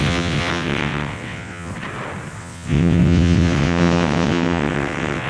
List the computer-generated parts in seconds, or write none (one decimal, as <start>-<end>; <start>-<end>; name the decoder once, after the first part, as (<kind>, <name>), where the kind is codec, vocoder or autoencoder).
0.0-1.7 (vocoder, WaveNeXt); 2.4-5.3